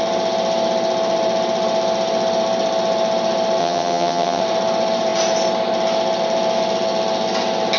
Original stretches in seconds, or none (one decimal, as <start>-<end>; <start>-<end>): 0.0-3.6; 4.4-7.8